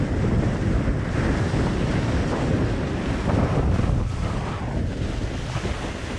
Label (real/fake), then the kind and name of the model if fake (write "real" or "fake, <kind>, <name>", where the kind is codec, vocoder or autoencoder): real